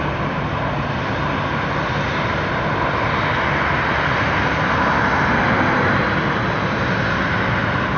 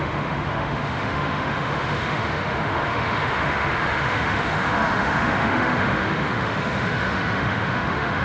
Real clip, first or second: first